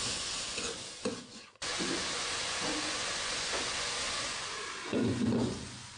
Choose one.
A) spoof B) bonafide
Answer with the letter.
A